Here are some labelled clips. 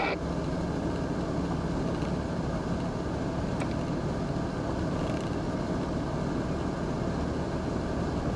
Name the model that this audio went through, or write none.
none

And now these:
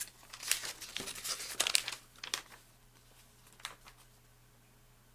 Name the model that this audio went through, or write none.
none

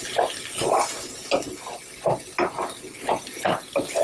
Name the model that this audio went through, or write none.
none